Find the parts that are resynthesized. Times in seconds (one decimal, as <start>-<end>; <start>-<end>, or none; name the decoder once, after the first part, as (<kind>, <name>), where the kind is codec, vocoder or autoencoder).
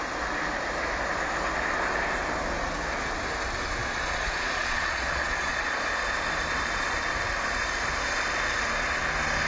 3.8-5.8 (vocoder, Vocos)